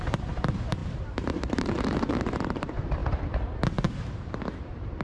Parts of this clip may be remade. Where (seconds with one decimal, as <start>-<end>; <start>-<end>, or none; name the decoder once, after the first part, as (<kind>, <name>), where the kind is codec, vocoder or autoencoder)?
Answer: 0.0-3.0 (vocoder, BigVGAN v2); 4.6-5.0